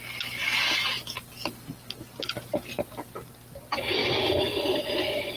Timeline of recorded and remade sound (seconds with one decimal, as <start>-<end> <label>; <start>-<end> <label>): 0.0-5.4 recorded